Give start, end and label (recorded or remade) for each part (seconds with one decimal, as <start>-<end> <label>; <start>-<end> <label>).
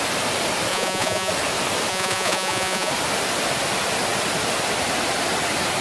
0.0-0.7 recorded; 0.7-1.3 remade; 1.3-1.9 recorded; 1.9-2.9 remade; 2.9-5.8 recorded